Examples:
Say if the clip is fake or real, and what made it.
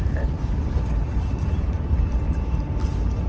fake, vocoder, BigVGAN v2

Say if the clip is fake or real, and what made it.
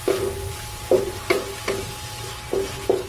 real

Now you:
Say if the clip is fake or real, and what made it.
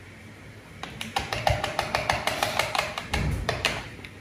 fake, vocoder, BigVGAN v2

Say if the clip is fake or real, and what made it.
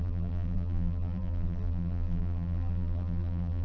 fake, vocoder, BigVGAN v2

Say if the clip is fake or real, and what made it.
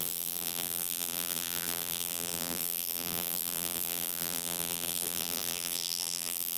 fake, vocoder, BigVGAN v2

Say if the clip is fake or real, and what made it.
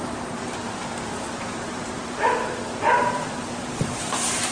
fake, vocoder, BigVGAN v2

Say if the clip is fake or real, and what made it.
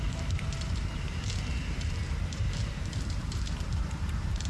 fake, vocoder, BigVGAN v2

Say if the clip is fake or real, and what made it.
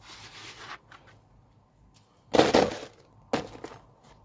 real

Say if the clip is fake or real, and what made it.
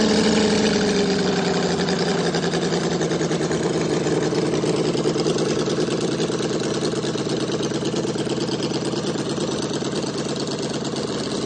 real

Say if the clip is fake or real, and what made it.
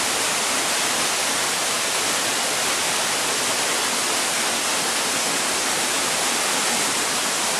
real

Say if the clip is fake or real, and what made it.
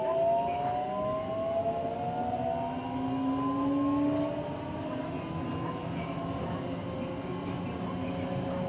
real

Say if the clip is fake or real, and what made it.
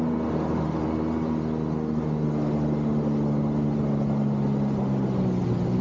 real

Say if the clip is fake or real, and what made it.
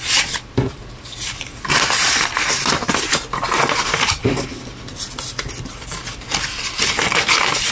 real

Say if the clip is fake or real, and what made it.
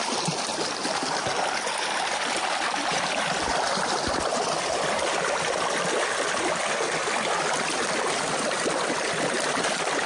fake, vocoder, BigVGAN v2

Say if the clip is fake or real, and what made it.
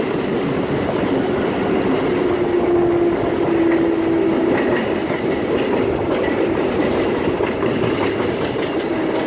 real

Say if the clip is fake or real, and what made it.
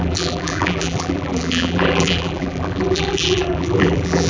fake, vocoder, BigVGAN v2